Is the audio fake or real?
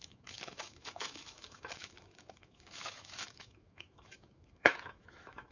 fake